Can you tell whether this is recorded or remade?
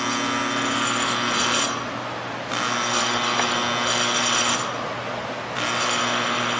recorded